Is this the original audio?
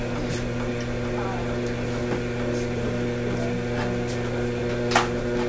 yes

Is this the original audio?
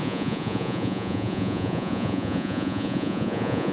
no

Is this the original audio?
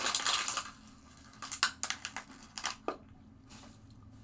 yes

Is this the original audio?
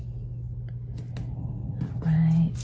yes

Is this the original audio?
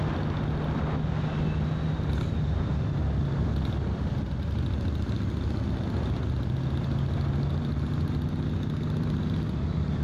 yes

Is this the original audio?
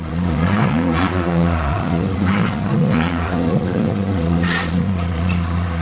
no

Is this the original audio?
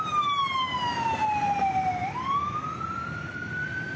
yes